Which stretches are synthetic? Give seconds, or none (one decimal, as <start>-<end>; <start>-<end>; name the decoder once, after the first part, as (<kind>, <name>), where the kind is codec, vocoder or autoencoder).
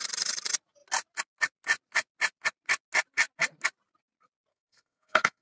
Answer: 4.5-5.4 (codec, SNAC)